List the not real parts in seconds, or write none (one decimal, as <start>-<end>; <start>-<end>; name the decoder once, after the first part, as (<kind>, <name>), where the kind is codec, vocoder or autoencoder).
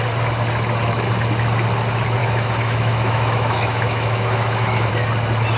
2.2-4.9 (autoencoder, DAC-VAE)